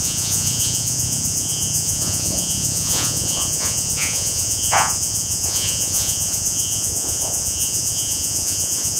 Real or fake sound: fake